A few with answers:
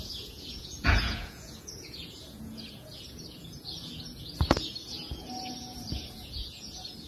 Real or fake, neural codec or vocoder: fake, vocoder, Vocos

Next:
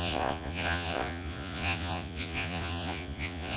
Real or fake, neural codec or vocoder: fake, vocoder, Vocos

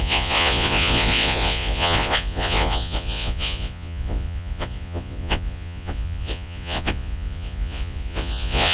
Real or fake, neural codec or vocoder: fake, vocoder, Vocos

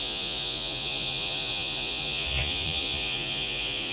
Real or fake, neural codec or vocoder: fake, vocoder, Vocos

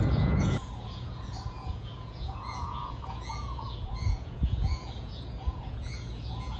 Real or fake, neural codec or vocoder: fake, vocoder, Vocos